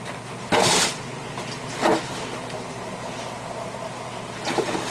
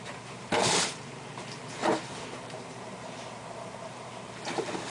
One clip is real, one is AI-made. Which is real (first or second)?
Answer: first